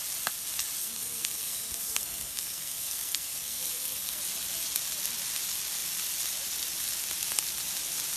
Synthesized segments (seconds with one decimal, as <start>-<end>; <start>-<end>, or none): 0.8-4.2